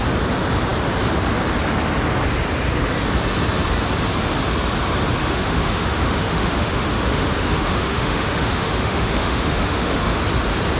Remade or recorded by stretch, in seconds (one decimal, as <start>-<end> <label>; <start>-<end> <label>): 0.0-5.2 recorded; 5.2-10.2 remade; 10.2-10.8 recorded